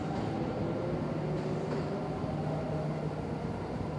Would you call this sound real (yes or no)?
yes